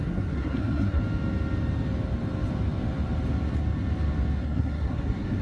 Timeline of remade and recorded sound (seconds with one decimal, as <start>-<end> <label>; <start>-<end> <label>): 0.0-1.0 remade; 1.0-4.4 recorded; 4.4-5.4 remade